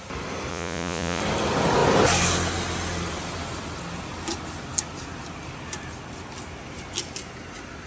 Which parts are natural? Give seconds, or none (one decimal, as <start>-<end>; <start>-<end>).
0.0-0.5; 1.2-7.9